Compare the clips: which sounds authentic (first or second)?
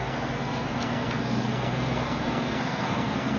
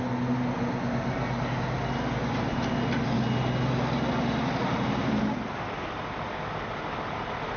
second